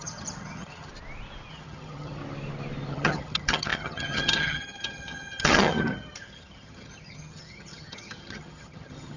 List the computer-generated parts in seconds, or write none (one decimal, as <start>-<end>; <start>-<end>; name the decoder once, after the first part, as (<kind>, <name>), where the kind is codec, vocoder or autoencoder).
0.0-0.9 (vocoder, HiFi-GAN); 1.5-2.2; 2.9-9.2